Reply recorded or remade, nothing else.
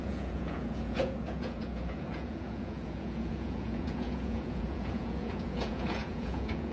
remade